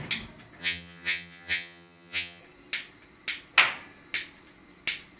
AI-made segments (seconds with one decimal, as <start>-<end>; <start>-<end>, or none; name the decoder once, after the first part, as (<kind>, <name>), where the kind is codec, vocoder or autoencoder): 0.6-2.4 (vocoder, HiFi-GAN)